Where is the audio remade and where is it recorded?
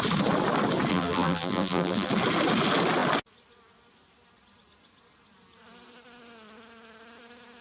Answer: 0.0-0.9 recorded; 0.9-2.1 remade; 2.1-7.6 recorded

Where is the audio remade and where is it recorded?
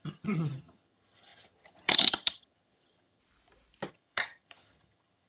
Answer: 0.0-3.2 remade; 3.2-3.9 recorded; 3.9-5.3 remade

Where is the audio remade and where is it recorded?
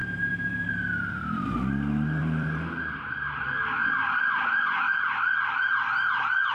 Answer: 0.0-1.7 remade; 1.7-2.2 recorded; 2.2-3.5 remade; 3.5-6.5 recorded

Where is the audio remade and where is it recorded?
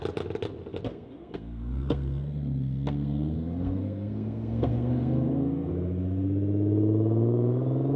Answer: 0.0-0.9 recorded; 0.9-5.7 remade; 5.7-8.0 recorded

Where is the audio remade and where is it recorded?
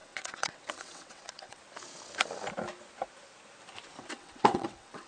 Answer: 0.0-1.6 remade; 1.6-4.0 recorded; 4.0-5.1 remade